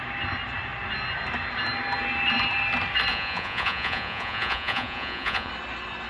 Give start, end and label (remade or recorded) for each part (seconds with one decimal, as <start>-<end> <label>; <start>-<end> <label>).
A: 0.0-3.1 recorded; 3.1-5.5 remade; 5.5-6.1 recorded